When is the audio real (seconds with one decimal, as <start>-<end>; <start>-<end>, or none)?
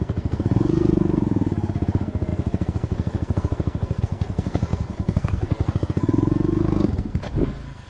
none